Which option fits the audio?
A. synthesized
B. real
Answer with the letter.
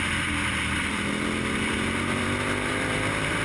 A